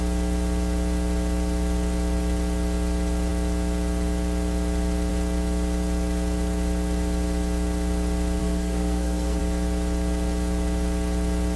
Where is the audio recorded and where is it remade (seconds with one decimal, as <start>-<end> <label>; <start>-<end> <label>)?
0.0-8.4 recorded; 8.4-9.4 remade; 9.4-11.6 recorded